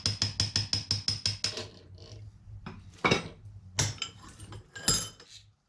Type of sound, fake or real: real